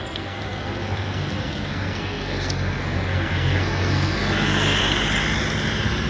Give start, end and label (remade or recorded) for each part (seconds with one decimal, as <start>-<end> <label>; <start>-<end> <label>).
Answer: 0.0-4.8 remade; 4.8-6.1 recorded